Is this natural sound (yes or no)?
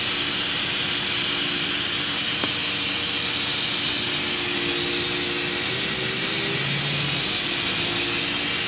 yes